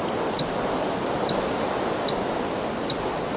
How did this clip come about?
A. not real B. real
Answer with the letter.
B